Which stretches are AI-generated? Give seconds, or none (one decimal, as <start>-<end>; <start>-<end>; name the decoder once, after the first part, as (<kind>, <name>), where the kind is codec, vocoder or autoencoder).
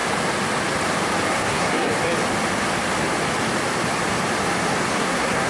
1.3-1.9 (codec, SNAC); 4.9-5.5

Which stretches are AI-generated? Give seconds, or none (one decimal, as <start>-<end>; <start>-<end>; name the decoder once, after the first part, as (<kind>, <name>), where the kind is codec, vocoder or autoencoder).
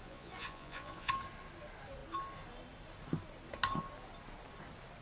0.0-1.1 (vocoder, Vocos)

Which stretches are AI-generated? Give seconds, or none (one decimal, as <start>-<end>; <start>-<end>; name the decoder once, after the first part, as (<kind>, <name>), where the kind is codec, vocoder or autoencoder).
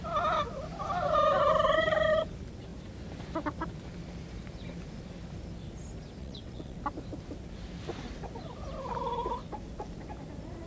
6.2-6.8 (vocoder, WaveNeXt)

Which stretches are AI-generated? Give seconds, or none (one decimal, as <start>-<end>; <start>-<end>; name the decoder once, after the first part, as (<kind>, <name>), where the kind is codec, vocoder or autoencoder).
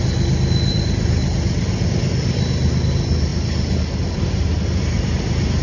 1.2-1.9 (vocoder, BigVGAN v2); 3.3-4.2